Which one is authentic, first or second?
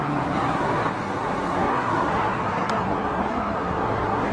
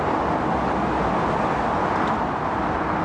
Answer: second